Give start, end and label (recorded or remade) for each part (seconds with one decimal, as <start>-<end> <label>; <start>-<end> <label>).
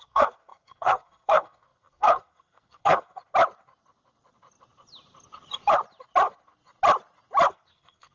0.0-3.2 remade; 3.2-7.5 recorded; 7.5-8.1 remade